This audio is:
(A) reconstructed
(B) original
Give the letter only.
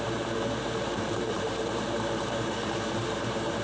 A